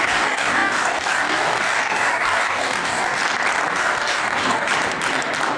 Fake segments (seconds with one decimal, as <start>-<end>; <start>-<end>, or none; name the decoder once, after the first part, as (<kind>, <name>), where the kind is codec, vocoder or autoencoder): 0.0-3.2 (codec, DAC); 3.7-4.7